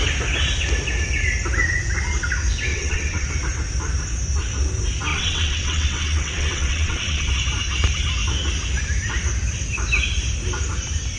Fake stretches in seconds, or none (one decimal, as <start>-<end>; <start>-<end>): 2.7-3.3; 5.1-7.3